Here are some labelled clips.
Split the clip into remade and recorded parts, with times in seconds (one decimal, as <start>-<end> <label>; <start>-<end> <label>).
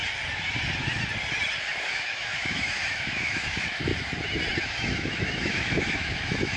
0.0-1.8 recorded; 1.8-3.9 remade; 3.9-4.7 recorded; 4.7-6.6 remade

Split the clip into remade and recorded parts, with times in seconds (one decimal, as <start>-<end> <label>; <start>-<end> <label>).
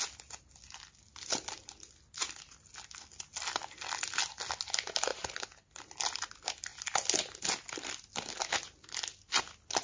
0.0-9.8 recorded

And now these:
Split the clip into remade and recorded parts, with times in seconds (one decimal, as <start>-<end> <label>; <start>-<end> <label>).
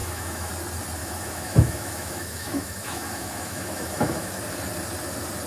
0.0-0.5 remade; 0.5-1.0 recorded; 1.0-4.3 remade; 4.3-5.5 recorded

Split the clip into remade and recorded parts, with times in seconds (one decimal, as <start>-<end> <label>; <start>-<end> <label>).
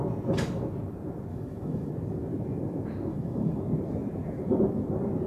0.0-1.3 recorded; 1.3-1.9 remade; 1.9-3.1 recorded; 3.1-3.6 remade; 3.6-5.3 recorded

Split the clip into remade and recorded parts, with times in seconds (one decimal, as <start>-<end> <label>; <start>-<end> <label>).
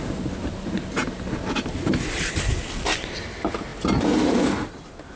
0.0-5.2 recorded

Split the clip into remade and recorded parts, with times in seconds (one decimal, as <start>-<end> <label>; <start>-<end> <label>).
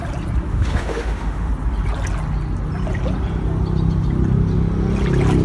0.0-0.5 recorded; 0.5-1.5 remade; 1.5-5.4 recorded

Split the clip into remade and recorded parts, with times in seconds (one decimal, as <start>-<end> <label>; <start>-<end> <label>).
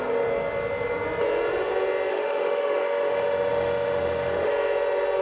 0.0-2.1 recorded; 2.1-4.5 remade; 4.5-5.2 recorded